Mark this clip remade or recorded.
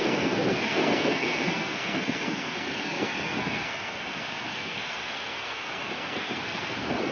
remade